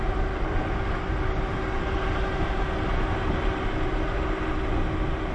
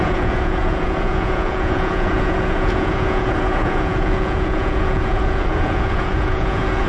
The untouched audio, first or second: first